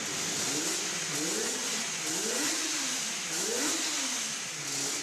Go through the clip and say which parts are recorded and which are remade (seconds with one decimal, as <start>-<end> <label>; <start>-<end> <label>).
0.0-5.0 recorded